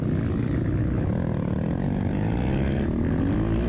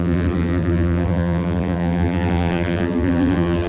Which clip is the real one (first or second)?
first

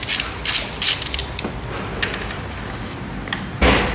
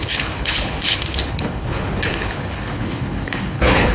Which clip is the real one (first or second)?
first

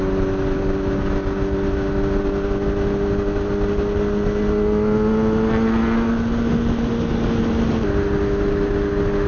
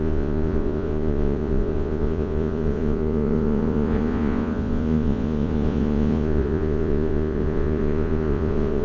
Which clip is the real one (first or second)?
first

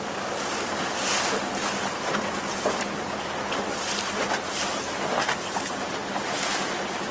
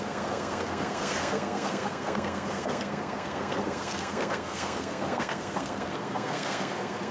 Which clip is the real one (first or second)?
first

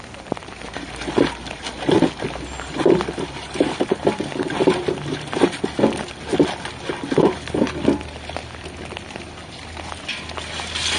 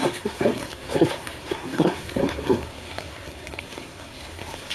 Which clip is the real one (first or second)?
first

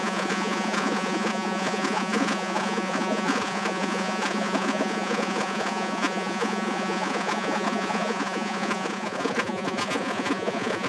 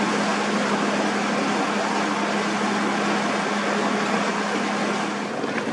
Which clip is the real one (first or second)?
second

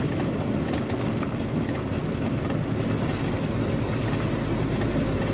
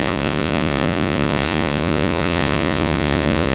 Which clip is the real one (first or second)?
first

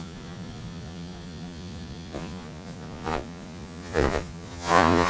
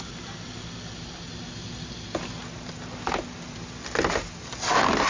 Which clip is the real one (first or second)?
second